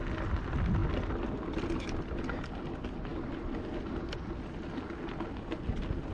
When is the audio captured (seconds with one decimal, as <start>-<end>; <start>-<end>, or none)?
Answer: 0.0-6.1